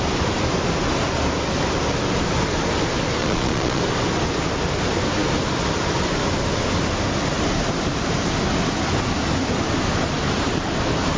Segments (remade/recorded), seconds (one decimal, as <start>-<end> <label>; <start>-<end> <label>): 0.0-3.2 recorded; 3.2-3.8 remade; 3.8-11.2 recorded